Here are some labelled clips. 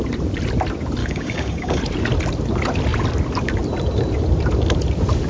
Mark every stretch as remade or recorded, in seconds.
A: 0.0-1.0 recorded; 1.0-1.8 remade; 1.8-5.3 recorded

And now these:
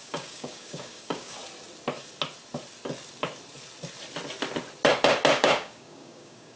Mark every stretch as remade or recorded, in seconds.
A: 0.0-1.4 remade; 1.4-5.3 recorded; 5.3-6.6 remade